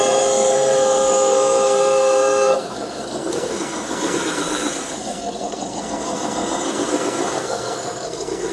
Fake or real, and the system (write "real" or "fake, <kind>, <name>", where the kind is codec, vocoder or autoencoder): fake, codec, SNAC